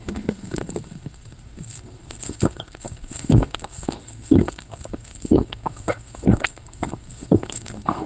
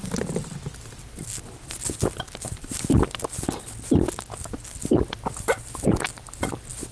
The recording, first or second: second